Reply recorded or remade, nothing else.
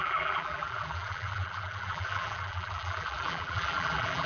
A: remade